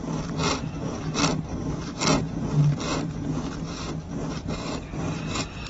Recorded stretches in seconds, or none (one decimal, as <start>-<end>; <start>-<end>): 0.0-1.5; 2.2-5.7